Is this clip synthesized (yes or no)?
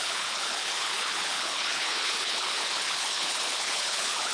yes